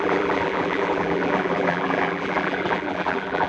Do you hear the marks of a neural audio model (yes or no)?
yes